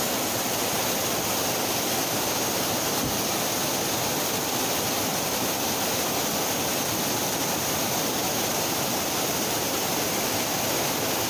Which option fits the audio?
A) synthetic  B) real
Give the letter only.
B